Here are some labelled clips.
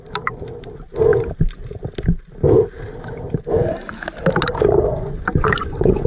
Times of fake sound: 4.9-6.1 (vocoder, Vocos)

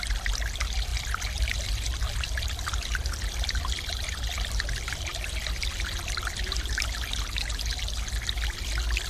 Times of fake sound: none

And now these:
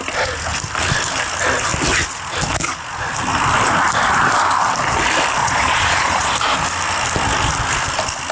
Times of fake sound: 5.4-6.3 (vocoder, Vocos)

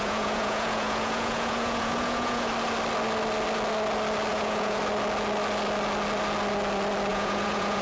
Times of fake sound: 0.0-2.5 (vocoder, Vocos); 4.3-4.8; 7.1-7.8